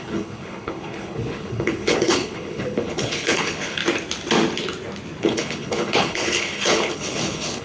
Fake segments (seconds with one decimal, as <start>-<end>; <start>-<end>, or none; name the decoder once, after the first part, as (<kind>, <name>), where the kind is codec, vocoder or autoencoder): 0.0-3.8 (codec, HILCodec); 5.2-7.6